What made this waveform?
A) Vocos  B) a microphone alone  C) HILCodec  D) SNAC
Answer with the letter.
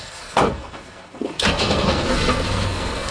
D